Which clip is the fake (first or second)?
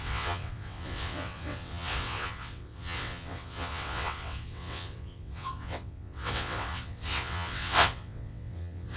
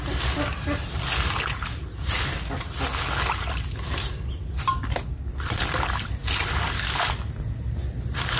first